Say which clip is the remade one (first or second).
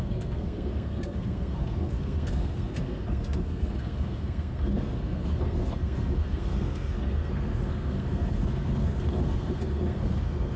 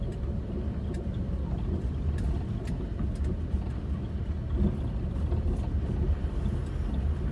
first